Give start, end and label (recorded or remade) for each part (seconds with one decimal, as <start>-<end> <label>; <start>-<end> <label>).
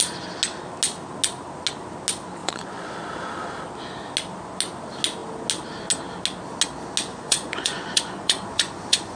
0.0-2.4 recorded; 2.4-3.0 remade; 3.0-7.1 recorded; 7.1-9.2 remade